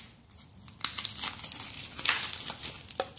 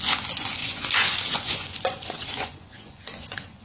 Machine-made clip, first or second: second